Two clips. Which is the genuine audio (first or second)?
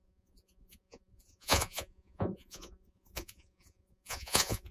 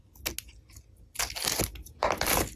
second